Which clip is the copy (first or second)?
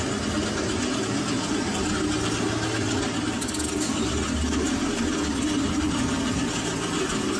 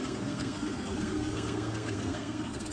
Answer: second